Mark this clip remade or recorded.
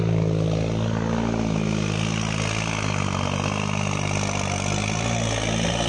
recorded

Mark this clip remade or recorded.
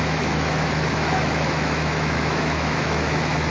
remade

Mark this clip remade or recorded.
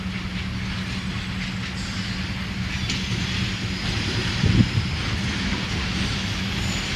recorded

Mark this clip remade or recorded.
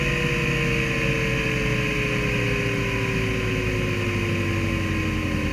recorded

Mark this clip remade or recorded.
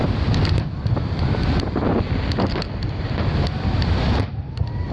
recorded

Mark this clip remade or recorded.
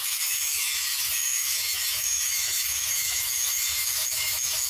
remade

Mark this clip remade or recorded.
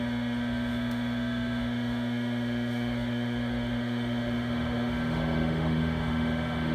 remade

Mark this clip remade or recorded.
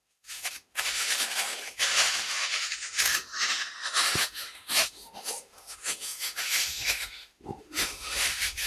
remade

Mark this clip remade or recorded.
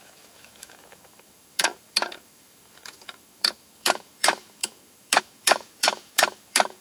remade